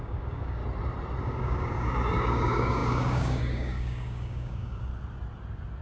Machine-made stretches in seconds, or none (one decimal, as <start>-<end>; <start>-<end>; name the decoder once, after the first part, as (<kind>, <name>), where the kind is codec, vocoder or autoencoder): 0.0-0.6 (codec, DAC); 1.2-4.9